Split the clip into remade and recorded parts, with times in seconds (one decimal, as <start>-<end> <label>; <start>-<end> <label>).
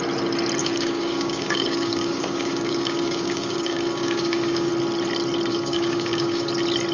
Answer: 0.0-0.6 recorded; 0.6-4.7 remade; 4.7-5.5 recorded; 5.5-6.5 remade; 6.5-6.9 recorded